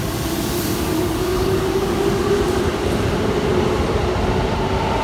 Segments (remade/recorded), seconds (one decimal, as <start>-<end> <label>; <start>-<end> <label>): 0.0-1.3 recorded; 1.3-2.3 remade; 2.3-5.0 recorded